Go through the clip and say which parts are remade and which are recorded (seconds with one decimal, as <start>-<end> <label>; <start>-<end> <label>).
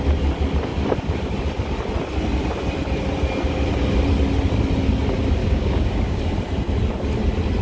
0.0-5.4 recorded; 5.4-6.2 remade; 6.2-7.6 recorded